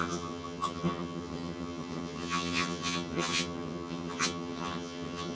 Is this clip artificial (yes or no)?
yes